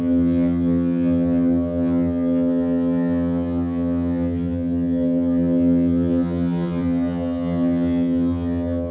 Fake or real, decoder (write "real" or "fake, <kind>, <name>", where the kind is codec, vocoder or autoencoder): fake, vocoder, HiFi-GAN